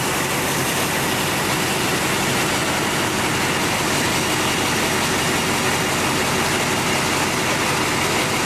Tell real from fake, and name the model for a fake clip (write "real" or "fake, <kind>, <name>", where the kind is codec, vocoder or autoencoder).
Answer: real